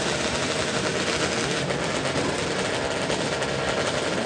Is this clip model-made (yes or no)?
no